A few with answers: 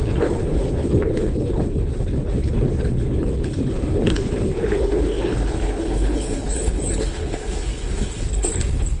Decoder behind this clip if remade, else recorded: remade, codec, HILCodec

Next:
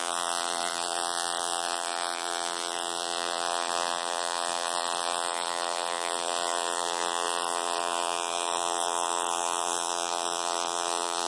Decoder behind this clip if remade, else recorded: remade, vocoder, BigVGAN v2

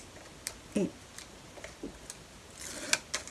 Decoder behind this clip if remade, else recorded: recorded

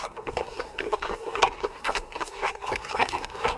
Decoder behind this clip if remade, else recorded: remade, codec, SNAC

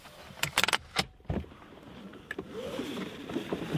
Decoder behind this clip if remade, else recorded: recorded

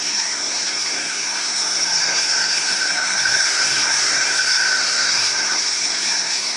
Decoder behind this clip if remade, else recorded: remade, codec, SNAC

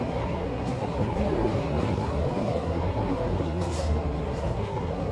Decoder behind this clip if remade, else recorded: remade, codec, SNAC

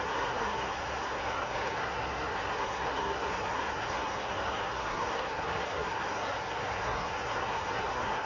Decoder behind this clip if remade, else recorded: remade, codec, SNAC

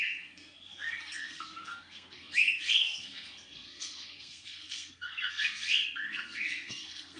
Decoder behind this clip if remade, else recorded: remade, codec, SNAC